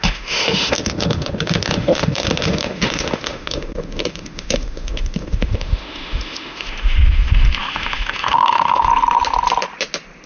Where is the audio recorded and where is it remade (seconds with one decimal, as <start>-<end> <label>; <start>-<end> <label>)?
0.0-8.9 remade; 8.9-10.3 recorded